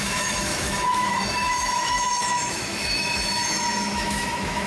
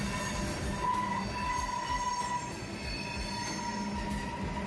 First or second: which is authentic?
second